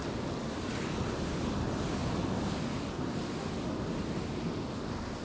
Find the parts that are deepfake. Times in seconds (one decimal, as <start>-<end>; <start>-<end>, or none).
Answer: none